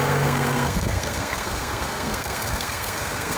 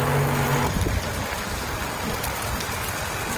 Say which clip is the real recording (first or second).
second